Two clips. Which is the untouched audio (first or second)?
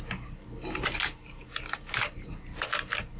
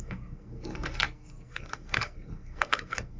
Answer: first